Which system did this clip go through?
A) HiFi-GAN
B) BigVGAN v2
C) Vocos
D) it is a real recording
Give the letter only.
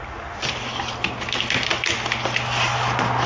D